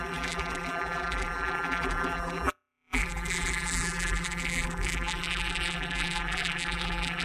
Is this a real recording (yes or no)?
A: no